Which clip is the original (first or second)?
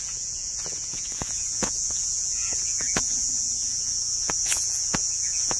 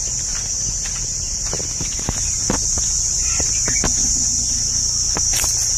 second